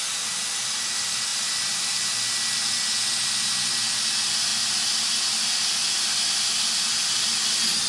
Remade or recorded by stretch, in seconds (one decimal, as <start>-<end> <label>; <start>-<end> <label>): 0.0-7.9 recorded